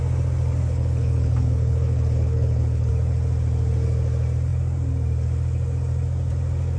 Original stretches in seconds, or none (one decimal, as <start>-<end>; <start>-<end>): 0.0-0.6; 2.9-6.8